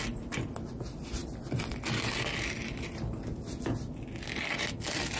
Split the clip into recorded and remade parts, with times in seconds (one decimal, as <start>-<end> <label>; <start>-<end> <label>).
0.0-5.2 recorded